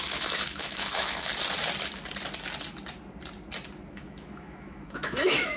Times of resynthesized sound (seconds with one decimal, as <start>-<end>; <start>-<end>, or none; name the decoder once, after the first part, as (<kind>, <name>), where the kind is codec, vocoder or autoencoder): 0.0-1.3 (autoencoder, DAC-VAE); 3.9-5.6